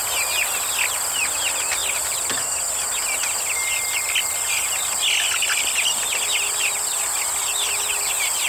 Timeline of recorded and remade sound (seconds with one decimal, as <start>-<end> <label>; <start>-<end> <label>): 0.0-8.5 recorded